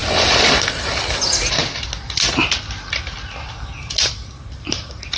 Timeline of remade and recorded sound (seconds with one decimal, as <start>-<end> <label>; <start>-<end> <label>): 0.0-5.2 recorded